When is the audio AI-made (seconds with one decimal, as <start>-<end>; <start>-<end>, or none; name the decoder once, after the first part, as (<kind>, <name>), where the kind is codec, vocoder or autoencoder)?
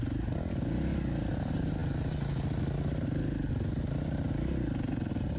none